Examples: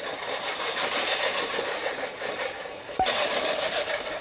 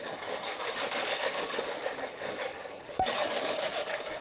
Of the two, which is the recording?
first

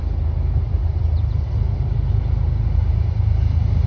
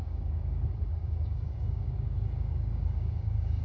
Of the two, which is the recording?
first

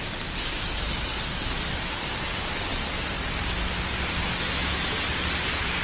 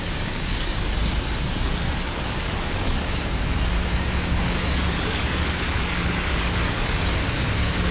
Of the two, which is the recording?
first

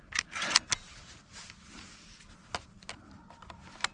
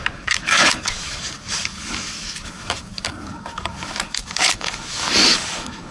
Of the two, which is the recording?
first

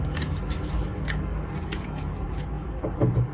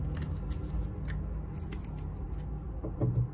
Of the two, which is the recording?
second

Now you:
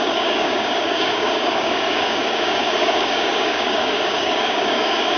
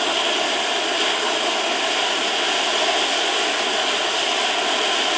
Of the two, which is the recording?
second